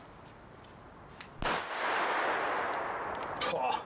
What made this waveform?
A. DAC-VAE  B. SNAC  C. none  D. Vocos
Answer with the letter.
C